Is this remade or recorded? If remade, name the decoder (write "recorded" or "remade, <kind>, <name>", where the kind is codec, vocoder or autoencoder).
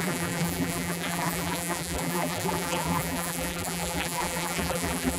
remade, vocoder, BigVGAN v2